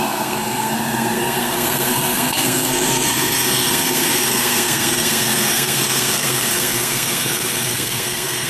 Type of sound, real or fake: fake